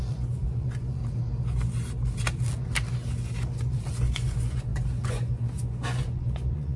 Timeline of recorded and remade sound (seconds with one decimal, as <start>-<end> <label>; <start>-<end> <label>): 0.0-1.0 remade; 1.0-3.9 recorded; 3.9-6.8 remade